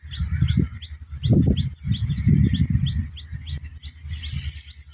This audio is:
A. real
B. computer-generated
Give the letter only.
A